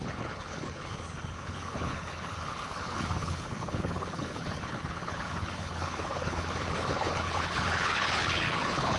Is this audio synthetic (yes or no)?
yes